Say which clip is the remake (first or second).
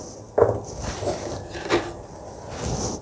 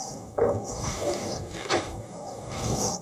second